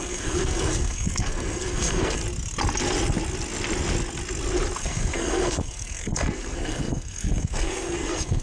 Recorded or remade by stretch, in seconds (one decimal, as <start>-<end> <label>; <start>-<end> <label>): 0.0-2.2 remade; 2.2-4.8 recorded; 4.8-8.4 remade

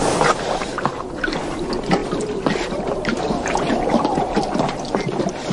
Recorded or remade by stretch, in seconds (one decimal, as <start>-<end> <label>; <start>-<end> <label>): 0.0-0.7 recorded; 0.7-1.4 remade; 1.4-5.5 recorded

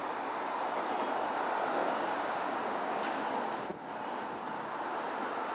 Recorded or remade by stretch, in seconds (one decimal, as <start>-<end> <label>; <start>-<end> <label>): 0.0-1.8 recorded; 1.8-3.3 remade; 3.3-5.5 recorded

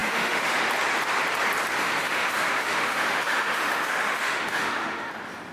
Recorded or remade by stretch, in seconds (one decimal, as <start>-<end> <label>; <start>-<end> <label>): 0.0-0.6 remade; 0.6-1.8 recorded; 1.8-5.1 remade; 5.1-5.5 recorded

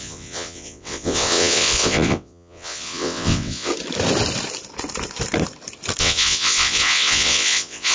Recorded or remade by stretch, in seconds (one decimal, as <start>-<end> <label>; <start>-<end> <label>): 0.0-3.7 remade; 3.7-6.0 recorded; 6.0-7.9 remade

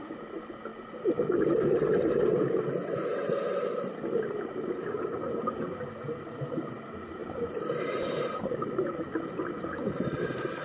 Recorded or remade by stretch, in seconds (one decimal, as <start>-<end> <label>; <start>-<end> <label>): 0.0-0.7 remade; 0.7-4.4 recorded; 4.4-10.6 remade